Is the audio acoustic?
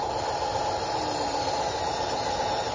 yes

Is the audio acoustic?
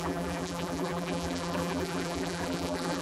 no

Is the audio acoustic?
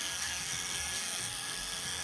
no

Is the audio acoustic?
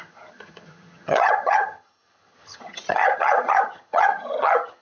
no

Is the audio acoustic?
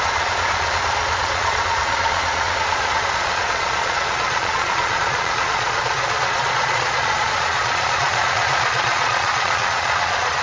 no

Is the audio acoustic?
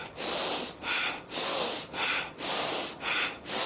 yes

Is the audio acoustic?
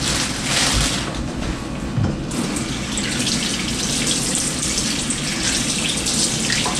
yes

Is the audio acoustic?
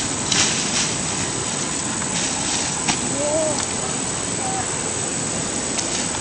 yes